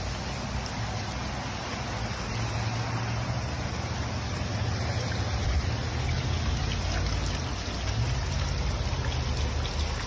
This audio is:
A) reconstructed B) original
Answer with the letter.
B